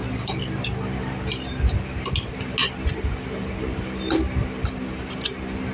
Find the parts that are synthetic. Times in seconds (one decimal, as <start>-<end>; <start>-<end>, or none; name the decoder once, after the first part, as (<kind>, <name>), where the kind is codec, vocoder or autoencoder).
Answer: none